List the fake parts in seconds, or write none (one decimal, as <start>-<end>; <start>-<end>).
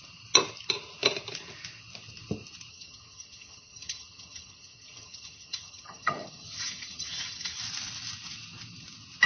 2.7-7.6